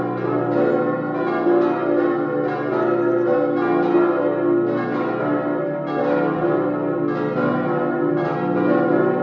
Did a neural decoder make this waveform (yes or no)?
no